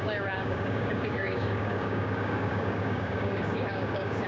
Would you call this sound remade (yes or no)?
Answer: yes